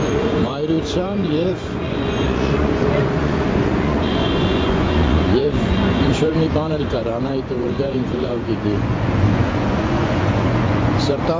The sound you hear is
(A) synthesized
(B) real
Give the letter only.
A